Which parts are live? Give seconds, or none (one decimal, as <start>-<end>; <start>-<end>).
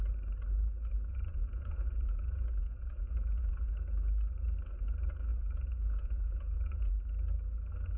0.0-1.1; 3.7-5.3; 6.9-8.0